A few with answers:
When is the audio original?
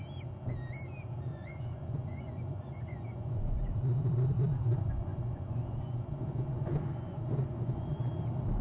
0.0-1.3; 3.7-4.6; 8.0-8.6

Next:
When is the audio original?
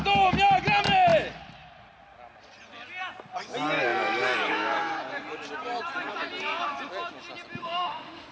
0.0-7.6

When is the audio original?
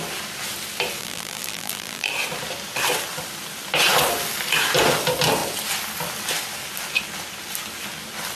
0.0-1.0; 2.1-8.3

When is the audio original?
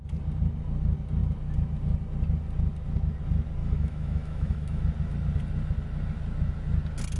0.0-3.6; 4.8-7.2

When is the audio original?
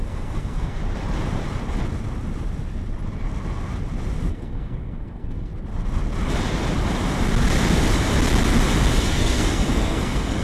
0.8-4.3; 5.5-9.0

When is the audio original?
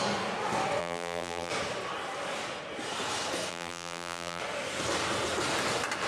0.0-0.8; 1.5-3.5; 4.4-6.1